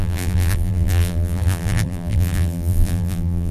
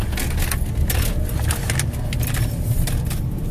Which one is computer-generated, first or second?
first